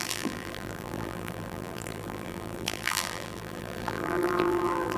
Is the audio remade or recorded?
remade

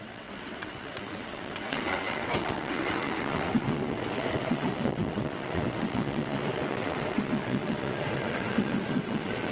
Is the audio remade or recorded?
remade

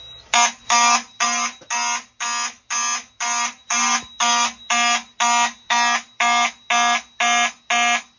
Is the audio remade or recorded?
recorded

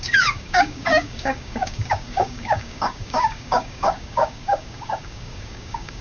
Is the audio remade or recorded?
remade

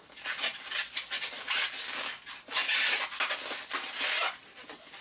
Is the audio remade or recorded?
recorded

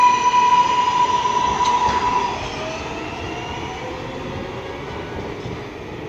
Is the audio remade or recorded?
recorded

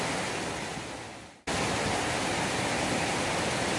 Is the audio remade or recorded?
recorded